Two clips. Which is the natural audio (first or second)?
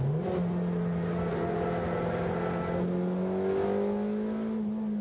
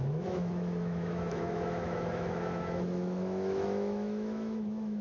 first